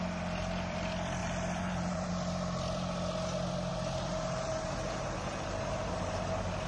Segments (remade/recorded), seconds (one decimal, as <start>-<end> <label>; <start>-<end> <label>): 0.0-1.2 recorded; 1.2-2.1 remade; 2.1-3.7 recorded; 3.7-5.9 remade; 5.9-6.7 recorded